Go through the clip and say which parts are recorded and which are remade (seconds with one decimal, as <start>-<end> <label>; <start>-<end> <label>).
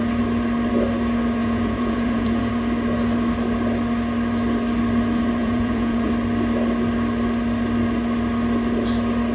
0.0-1.4 recorded; 1.4-2.5 remade; 2.5-5.4 recorded; 5.4-6.1 remade; 6.1-9.3 recorded